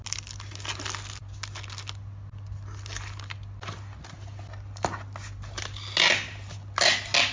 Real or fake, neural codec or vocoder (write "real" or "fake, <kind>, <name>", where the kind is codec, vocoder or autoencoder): real